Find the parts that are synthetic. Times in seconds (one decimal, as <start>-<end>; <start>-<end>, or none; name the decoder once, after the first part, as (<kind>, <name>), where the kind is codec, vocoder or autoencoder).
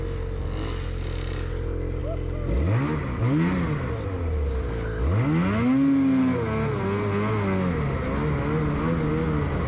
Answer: none